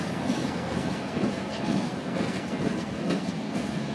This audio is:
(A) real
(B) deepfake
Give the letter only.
B